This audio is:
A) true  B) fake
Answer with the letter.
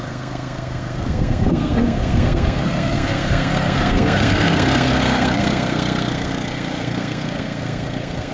B